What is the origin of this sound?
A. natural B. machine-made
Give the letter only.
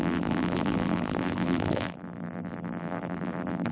B